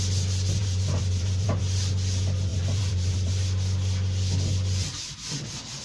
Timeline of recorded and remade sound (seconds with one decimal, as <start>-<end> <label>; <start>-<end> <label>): 0.0-0.6 recorded; 0.6-1.6 remade; 1.6-2.5 recorded; 2.5-3.3 remade; 3.3-5.8 recorded